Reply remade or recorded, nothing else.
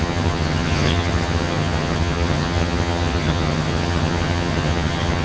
remade